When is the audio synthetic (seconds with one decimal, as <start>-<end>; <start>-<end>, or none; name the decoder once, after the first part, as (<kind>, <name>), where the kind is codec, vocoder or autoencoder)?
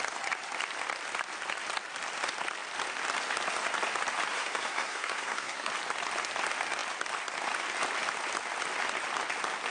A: 4.3-5.7 (codec, SNAC)